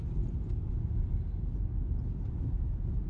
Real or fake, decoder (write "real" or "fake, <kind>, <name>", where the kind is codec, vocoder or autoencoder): real